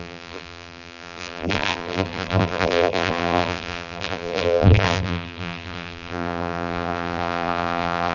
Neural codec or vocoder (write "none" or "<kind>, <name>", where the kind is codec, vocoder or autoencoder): vocoder, BigVGAN v2